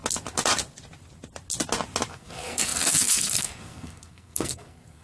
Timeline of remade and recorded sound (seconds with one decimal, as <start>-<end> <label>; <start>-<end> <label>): 0.0-2.1 recorded; 2.1-5.0 remade